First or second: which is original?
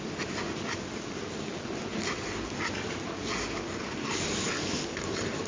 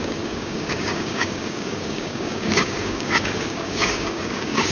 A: first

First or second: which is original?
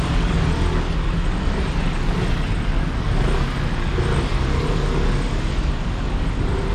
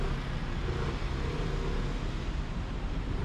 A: second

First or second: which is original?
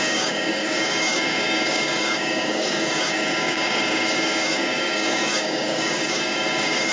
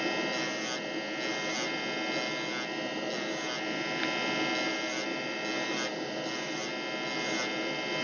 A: second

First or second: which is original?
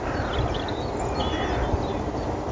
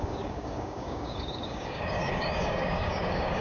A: first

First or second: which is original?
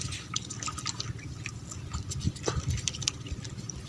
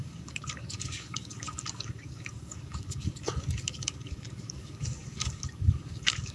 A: first